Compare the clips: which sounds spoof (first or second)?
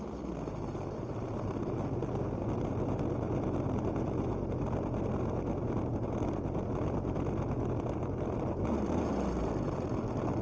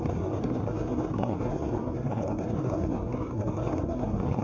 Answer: second